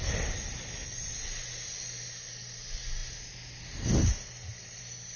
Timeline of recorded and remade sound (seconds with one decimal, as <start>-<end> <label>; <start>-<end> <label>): 0.0-5.2 recorded